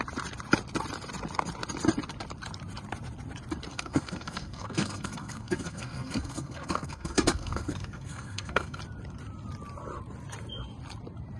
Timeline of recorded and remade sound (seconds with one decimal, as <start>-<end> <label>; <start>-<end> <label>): 0.0-3.7 recorded; 3.7-8.8 remade; 8.8-11.4 recorded